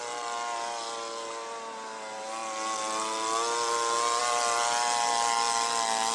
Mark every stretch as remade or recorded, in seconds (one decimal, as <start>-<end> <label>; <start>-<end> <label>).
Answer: 0.0-6.1 recorded